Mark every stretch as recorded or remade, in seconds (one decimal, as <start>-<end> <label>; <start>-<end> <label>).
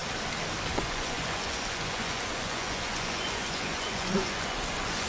0.0-0.7 recorded; 0.7-5.1 remade